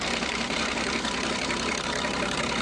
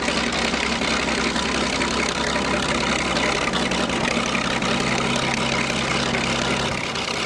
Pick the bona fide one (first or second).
second